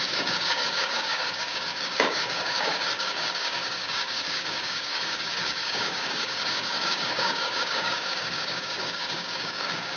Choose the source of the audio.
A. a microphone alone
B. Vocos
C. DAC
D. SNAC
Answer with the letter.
C